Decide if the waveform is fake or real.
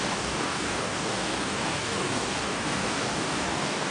fake